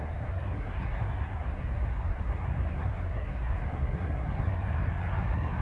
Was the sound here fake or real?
fake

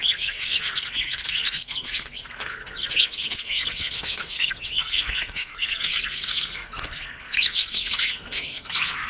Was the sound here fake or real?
fake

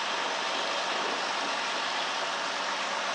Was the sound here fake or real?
real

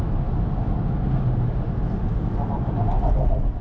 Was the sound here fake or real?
real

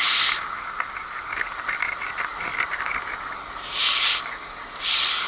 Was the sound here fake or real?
real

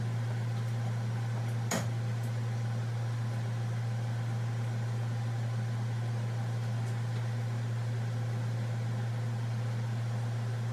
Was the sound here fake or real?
real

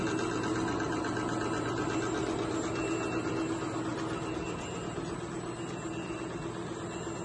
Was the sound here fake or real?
real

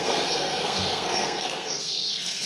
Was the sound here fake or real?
fake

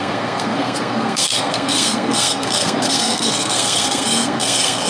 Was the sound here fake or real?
fake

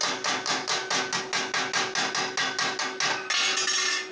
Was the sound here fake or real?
real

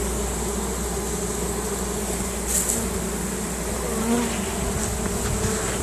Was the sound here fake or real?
real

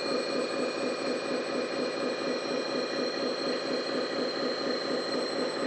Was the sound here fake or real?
real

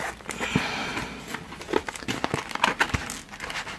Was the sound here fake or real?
real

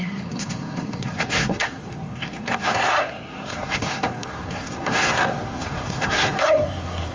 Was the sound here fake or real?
fake